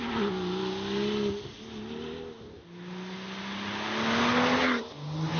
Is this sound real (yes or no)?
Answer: yes